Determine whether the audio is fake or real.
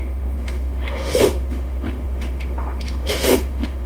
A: fake